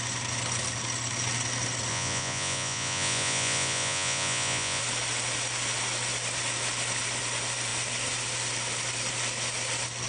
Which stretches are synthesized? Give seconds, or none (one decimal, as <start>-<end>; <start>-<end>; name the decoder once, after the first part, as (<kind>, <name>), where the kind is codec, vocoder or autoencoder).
1.9-4.8 (vocoder, Vocos)